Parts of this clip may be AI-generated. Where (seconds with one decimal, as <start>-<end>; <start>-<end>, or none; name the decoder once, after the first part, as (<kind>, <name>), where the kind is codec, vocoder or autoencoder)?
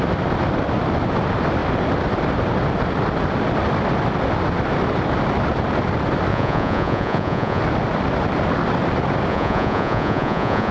6.3-7.6 (vocoder, Vocos); 9.3-10.7